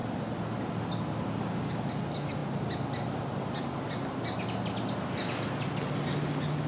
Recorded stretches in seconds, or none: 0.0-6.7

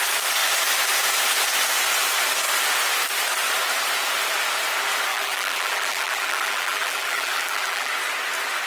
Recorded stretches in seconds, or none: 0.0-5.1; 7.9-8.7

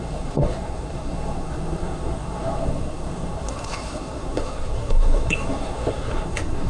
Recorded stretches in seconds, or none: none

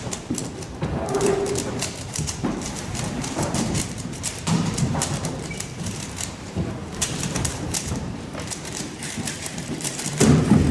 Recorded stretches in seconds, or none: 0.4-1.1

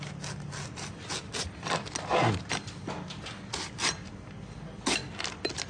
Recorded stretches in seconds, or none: 0.0-5.7

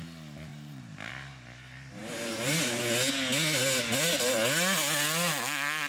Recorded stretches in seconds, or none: 0.0-0.5; 1.1-2.0; 2.8-5.9

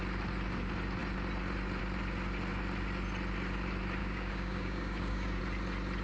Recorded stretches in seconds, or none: 0.0-4.0; 5.4-6.0